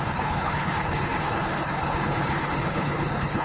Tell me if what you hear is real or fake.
fake